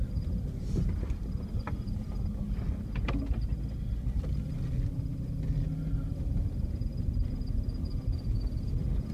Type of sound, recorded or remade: recorded